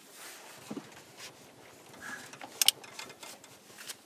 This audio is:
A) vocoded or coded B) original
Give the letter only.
B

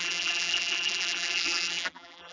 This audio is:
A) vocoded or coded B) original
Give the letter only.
A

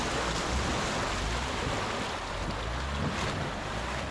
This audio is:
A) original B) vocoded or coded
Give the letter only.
A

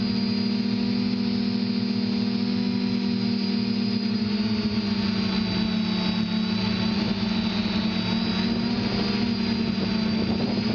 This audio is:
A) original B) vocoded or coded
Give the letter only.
A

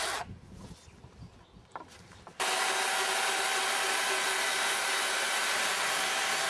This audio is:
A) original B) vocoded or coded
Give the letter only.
A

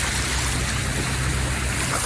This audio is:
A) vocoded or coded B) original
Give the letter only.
B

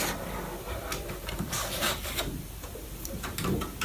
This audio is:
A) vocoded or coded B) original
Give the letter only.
A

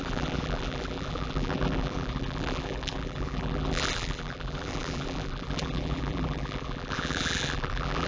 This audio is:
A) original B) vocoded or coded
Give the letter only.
B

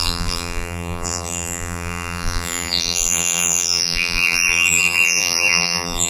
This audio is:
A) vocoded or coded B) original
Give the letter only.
A